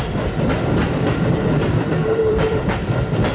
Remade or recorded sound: remade